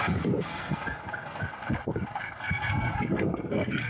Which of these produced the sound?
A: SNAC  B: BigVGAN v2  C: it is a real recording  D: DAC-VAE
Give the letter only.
A